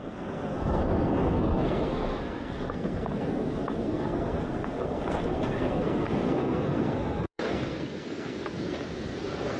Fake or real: fake